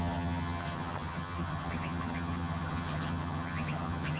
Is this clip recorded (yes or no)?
no